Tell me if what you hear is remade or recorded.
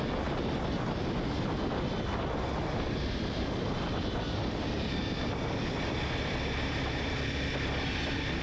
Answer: recorded